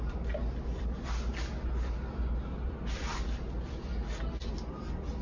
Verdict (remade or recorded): recorded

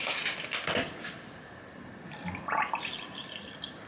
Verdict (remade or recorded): recorded